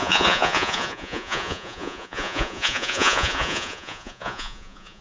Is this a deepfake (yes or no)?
yes